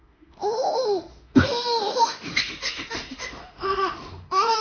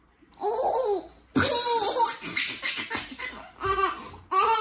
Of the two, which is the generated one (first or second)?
first